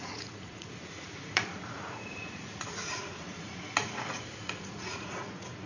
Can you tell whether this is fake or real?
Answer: fake